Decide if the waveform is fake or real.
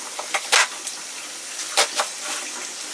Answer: real